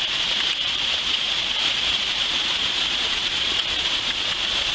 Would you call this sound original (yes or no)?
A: no